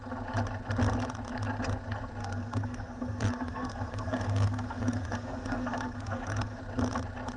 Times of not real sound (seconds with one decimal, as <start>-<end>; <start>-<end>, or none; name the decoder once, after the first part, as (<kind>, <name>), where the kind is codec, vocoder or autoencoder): 2.2-6.6 (codec, SNAC)